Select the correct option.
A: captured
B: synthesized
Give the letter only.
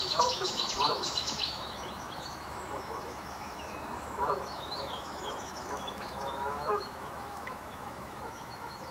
B